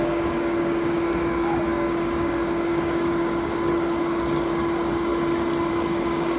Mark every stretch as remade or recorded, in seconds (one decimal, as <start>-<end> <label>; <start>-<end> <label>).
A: 0.0-5.1 remade; 5.1-5.7 recorded; 5.7-6.4 remade